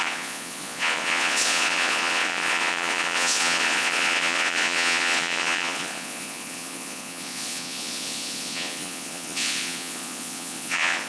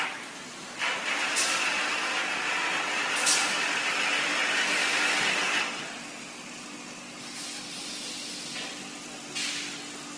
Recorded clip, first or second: second